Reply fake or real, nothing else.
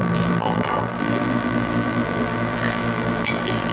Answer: fake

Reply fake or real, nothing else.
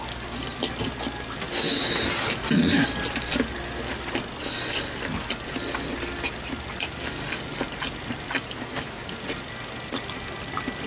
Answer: real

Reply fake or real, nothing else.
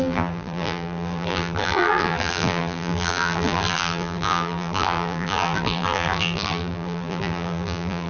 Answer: fake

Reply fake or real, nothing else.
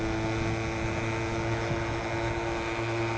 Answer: real